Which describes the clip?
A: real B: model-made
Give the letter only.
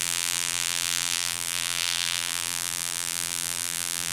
B